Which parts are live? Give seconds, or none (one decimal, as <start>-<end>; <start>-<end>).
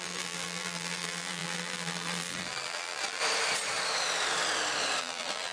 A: 3.2-5.0